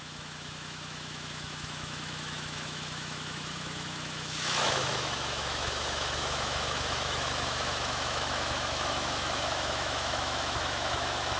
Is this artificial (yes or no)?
yes